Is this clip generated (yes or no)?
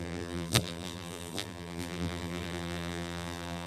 yes